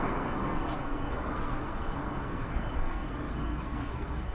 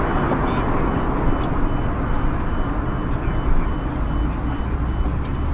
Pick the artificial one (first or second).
first